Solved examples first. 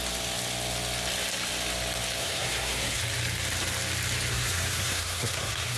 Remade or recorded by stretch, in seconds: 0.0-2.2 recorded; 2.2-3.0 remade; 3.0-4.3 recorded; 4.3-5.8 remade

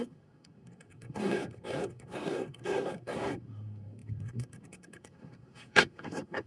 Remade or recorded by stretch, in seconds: 0.0-6.5 remade

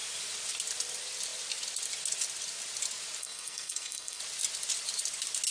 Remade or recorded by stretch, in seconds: 0.0-3.2 recorded; 3.2-4.2 remade; 4.2-5.5 recorded

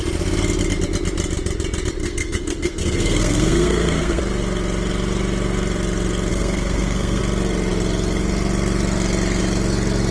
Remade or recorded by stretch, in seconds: 0.0-2.0 recorded; 2.0-4.2 remade; 4.2-6.3 recorded; 6.3-7.2 remade; 7.2-10.1 recorded

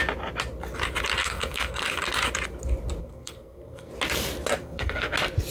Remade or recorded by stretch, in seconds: 0.0-1.2 recorded; 1.2-1.8 remade; 1.8-3.0 recorded; 3.0-3.9 remade; 3.9-4.6 recorded; 4.6-5.1 remade; 5.1-5.5 recorded

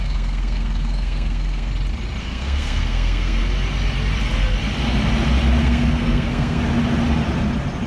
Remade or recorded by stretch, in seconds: 0.0-1.7 remade; 1.7-2.2 recorded; 2.2-3.4 remade; 3.4-5.6 recorded; 5.6-6.6 remade; 6.6-7.9 recorded

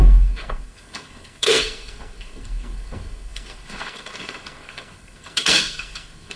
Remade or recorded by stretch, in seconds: 0.0-6.4 remade